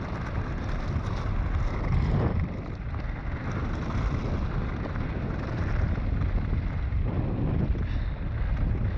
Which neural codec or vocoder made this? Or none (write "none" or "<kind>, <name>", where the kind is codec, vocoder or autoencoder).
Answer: none